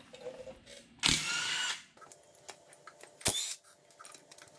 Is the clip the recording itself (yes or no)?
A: yes